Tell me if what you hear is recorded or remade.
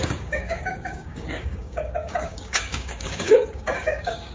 remade